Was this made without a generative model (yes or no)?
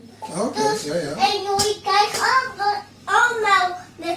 yes